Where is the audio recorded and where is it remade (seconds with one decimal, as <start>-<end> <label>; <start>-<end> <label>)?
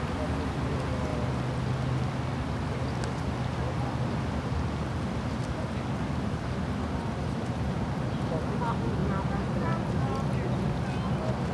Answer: 0.0-11.5 recorded